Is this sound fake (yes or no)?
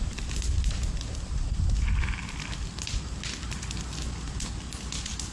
no